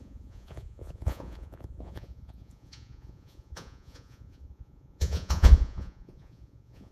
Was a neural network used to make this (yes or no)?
yes